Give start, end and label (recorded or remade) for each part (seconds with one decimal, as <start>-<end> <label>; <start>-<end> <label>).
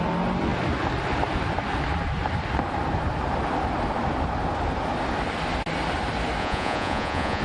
0.0-6.4 recorded; 6.4-7.4 remade